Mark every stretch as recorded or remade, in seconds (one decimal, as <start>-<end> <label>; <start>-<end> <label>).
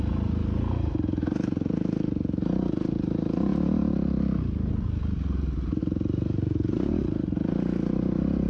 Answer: 0.0-3.5 remade; 3.5-5.8 recorded; 5.8-8.5 remade